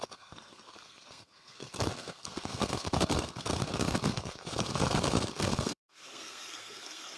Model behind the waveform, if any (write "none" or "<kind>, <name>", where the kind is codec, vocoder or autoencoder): codec, SNAC